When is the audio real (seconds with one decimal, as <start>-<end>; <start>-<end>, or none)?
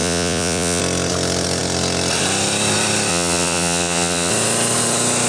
0.8-3.1; 4.3-5.3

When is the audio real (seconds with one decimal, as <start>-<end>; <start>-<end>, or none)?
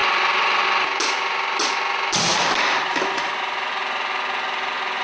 0.0-5.0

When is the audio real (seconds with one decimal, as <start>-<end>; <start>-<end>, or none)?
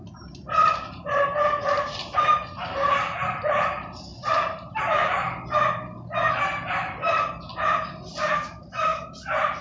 none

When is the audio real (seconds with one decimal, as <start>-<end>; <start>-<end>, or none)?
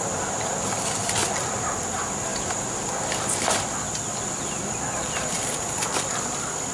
0.0-1.2; 1.7-2.3; 6.3-6.7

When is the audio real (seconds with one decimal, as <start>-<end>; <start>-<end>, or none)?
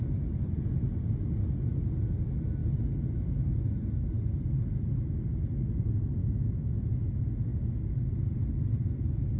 0.0-6.2; 6.8-9.4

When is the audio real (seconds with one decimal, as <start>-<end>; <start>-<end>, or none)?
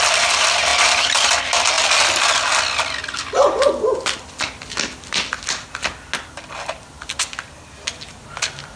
0.0-8.8